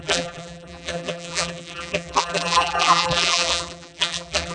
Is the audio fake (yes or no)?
yes